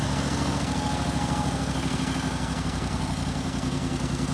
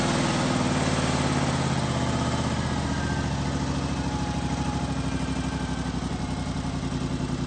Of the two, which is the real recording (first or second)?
second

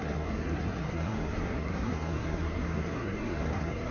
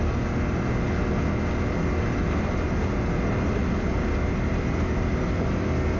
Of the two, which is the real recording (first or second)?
second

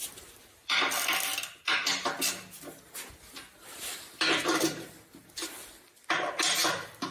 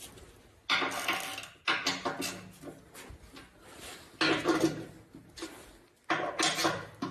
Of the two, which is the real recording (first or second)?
second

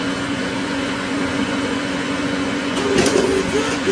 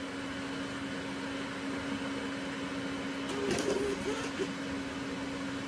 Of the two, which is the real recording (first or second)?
second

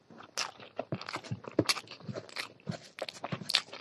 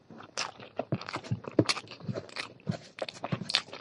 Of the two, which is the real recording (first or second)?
first